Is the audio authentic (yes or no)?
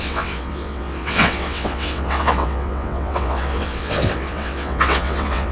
no